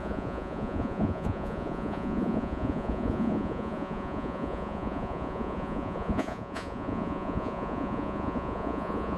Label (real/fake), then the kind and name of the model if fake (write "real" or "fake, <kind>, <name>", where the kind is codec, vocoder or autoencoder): fake, vocoder, Vocos